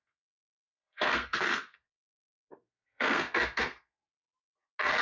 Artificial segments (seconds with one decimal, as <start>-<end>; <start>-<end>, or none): 0.0-4.0